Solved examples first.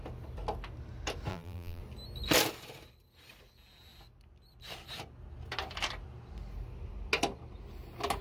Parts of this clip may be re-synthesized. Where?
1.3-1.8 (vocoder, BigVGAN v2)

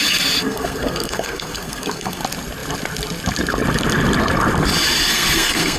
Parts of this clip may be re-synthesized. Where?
0.4-2.2 (codec, SNAC); 5.1-5.8

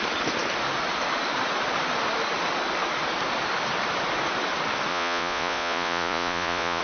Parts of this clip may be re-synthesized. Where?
4.9-6.8 (vocoder, Vocos)

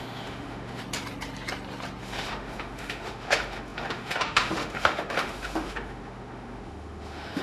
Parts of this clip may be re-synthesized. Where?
0.0-0.8 (autoencoder, DAC-VAE); 2.0-7.4

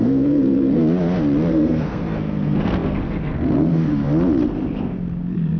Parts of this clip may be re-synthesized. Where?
0.0-0.8 (codec, SNAC); 1.5-3.9; 4.8-5.6